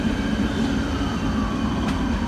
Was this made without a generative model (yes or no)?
yes